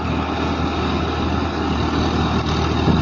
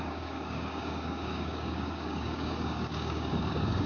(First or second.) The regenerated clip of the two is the second